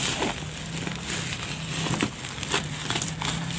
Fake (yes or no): no